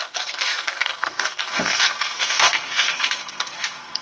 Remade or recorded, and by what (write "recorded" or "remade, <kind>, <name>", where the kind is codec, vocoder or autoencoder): remade, codec, SNAC